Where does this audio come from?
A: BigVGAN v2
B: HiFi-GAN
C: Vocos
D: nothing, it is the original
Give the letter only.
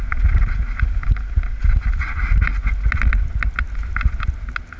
D